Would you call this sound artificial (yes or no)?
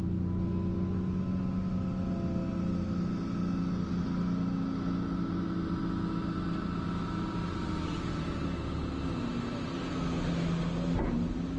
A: no